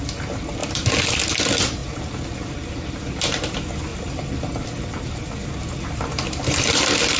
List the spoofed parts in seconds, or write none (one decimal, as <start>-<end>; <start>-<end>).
0.6-1.1; 1.8-3.5; 3.9-6.8